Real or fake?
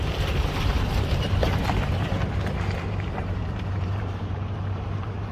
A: fake